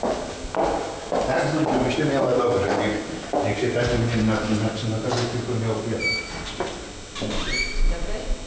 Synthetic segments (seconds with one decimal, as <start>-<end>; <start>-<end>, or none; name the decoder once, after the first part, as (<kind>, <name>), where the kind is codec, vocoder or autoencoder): none